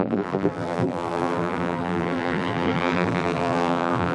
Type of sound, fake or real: fake